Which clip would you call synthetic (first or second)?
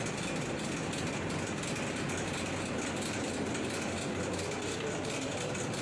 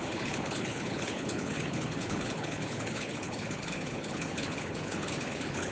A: second